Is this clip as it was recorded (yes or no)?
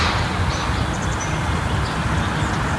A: yes